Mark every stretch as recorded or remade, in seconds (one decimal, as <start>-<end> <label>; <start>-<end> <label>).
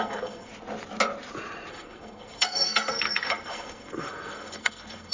0.0-0.5 remade; 0.5-1.7 recorded; 1.7-5.1 remade